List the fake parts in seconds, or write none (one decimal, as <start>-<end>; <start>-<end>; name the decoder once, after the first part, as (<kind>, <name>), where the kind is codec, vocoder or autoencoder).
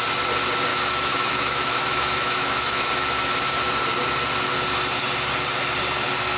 0.7-2.9 (autoencoder, DAC-VAE)